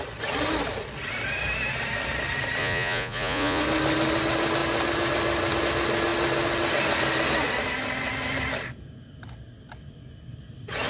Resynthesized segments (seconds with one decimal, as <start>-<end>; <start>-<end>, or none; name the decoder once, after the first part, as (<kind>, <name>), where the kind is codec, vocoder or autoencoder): 2.6-3.6 (vocoder, Vocos)